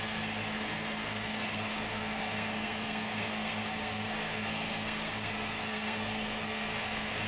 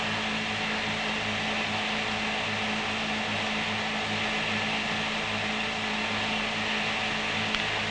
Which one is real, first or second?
second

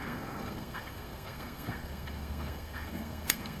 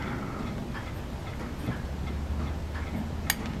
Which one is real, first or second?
second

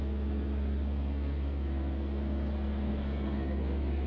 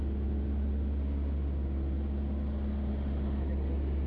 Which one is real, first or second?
second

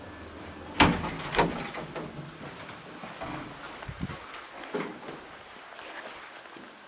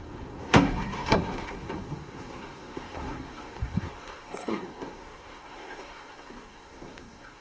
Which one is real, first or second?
first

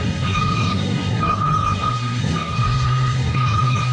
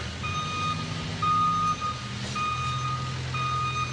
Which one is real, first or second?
second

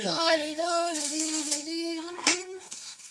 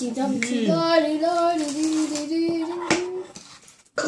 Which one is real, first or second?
second